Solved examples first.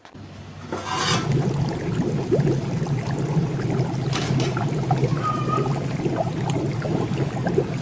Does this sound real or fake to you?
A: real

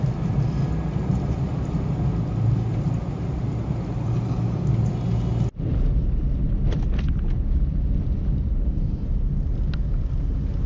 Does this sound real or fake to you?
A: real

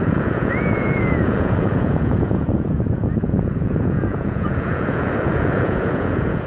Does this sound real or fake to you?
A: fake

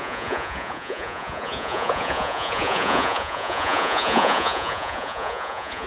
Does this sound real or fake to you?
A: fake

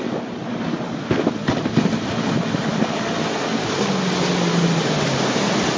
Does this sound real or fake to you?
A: real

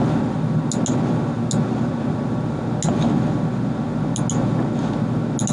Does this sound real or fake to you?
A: real